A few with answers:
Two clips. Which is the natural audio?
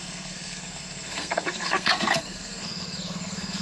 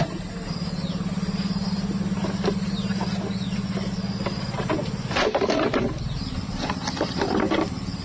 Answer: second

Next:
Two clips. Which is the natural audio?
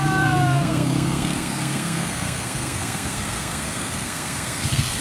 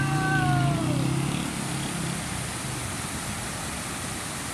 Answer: second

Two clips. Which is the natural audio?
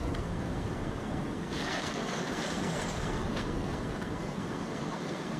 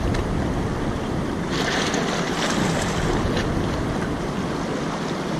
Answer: second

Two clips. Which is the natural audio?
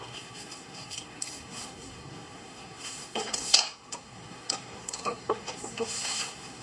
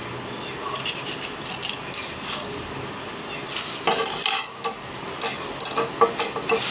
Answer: second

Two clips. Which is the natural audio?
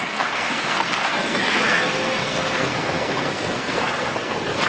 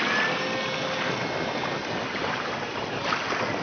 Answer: second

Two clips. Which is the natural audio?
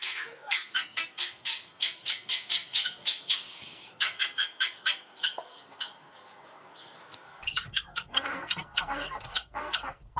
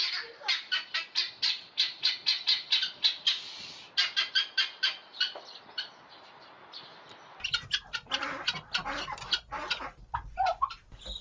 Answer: second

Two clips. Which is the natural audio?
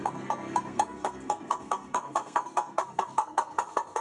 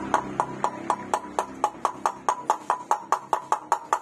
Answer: second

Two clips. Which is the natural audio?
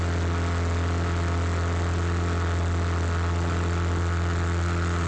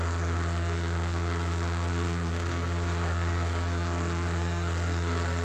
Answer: first